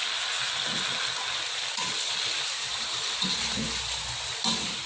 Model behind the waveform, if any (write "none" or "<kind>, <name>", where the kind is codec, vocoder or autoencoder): none